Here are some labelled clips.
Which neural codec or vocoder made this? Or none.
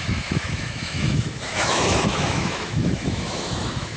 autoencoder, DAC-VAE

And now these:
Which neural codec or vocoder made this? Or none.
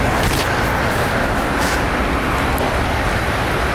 none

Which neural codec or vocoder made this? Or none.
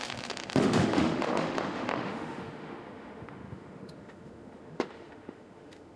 autoencoder, DAC-VAE